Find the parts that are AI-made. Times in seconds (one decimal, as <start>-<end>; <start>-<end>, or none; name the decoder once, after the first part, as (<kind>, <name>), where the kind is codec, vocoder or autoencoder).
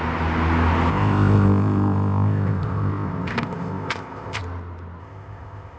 0.9-4.4 (codec, ZipCodec); 5.0-5.8